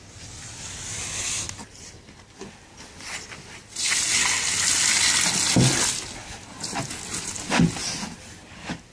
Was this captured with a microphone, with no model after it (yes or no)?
yes